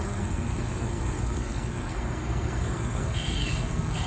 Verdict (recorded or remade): remade